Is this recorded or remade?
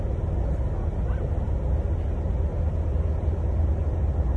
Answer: recorded